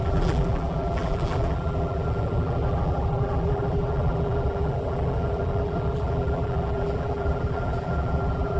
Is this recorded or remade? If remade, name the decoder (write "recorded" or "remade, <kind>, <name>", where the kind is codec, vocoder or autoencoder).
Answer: remade, vocoder, BigVGAN v2